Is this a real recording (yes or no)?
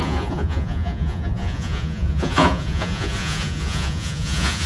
no